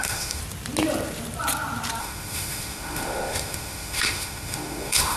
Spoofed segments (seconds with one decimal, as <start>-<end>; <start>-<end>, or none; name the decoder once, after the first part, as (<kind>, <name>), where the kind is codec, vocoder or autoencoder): 0.0-0.4 (autoencoder, DAC-VAE); 2.0-5.2